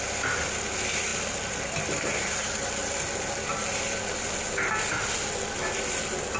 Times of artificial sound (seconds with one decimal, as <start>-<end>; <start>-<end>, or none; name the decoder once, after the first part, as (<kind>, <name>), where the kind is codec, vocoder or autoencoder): none